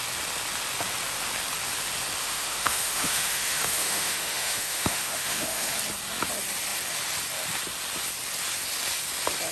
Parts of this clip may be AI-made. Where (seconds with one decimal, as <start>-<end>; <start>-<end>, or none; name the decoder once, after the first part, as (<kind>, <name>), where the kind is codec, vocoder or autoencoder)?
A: 2.2-5.7 (autoencoder, DAC-VAE)

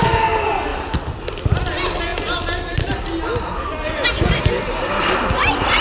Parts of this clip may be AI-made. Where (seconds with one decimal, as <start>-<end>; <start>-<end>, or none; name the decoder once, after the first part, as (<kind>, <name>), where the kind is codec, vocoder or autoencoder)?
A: none

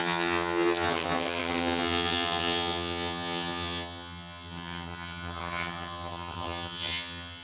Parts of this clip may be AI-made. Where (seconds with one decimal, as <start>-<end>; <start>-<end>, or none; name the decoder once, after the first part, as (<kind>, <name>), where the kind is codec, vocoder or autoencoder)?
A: 0.0-7.4 (vocoder, HiFi-GAN)

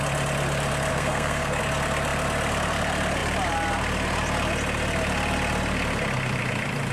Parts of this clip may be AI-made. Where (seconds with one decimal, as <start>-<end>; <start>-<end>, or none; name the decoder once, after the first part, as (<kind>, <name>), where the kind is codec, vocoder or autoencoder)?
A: 0.9-1.6 (codec, SNAC)

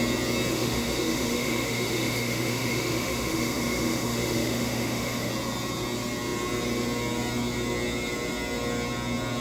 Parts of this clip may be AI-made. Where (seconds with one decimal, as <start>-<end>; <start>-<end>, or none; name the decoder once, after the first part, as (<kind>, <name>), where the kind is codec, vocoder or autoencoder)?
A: 0.5-5.3 (autoencoder, DAC-VAE)

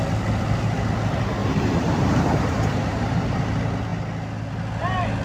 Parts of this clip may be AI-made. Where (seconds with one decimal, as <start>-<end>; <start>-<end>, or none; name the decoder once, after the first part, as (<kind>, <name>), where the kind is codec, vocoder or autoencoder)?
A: 1.4-3.4 (vocoder, BigVGAN v2)

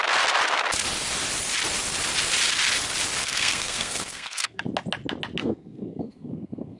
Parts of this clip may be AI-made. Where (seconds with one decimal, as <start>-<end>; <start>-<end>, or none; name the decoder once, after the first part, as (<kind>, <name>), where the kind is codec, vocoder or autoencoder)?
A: 3.2-4.6 (codec, SNAC); 5.4-6.8